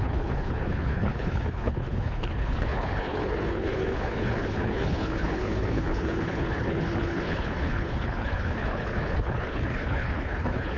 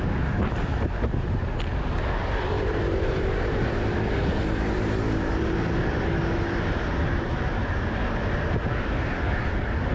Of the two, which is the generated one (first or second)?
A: first